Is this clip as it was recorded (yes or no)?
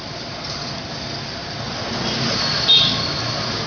yes